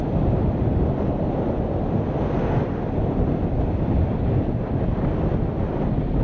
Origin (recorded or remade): recorded